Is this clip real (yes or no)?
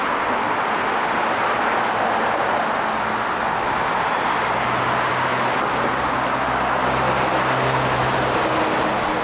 yes